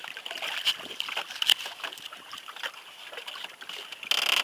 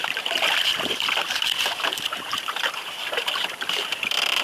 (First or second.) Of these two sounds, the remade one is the second